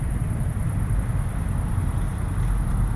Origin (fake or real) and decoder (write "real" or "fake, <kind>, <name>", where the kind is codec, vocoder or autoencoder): real